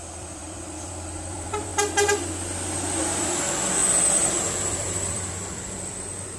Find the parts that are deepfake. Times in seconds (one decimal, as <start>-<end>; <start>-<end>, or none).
0.0-1.7; 3.0-6.4